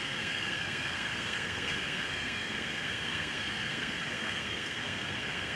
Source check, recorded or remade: remade